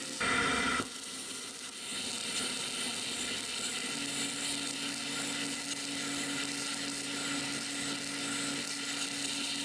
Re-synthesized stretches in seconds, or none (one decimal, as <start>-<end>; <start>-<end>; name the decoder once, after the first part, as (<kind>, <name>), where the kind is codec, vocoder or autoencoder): none